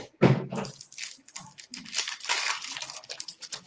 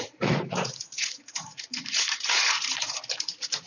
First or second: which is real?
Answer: first